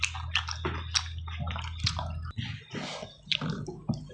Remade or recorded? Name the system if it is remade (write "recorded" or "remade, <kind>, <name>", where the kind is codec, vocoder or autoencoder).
recorded